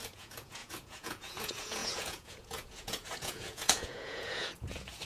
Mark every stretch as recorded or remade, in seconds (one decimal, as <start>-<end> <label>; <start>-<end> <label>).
0.0-5.0 remade